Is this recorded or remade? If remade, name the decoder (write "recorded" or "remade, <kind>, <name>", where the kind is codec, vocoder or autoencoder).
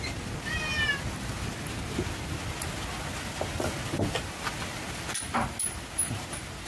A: recorded